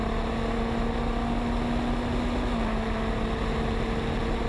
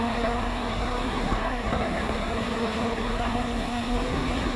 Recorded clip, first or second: first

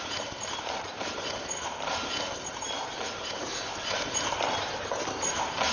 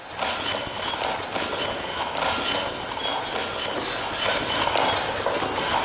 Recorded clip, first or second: second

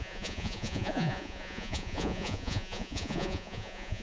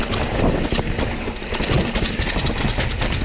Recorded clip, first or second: second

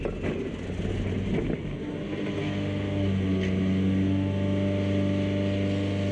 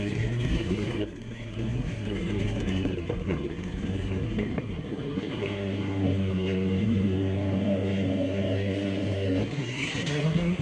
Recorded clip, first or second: first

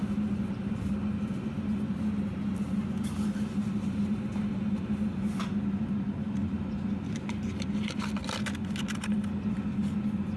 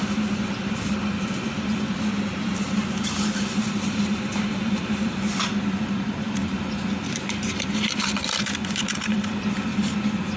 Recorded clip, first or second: first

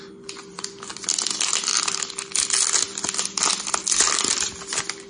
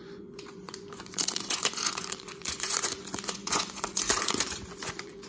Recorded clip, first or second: first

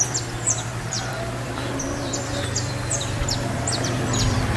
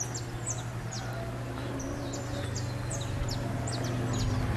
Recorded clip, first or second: second